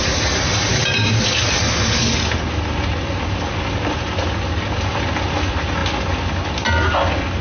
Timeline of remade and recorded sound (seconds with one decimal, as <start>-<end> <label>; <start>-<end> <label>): 0.0-7.4 recorded